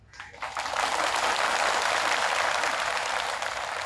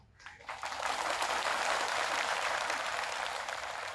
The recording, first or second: first